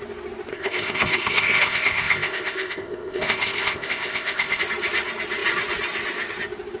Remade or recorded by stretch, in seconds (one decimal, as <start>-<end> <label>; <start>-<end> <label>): 0.0-0.5 recorded; 0.5-4.6 remade; 4.6-6.8 recorded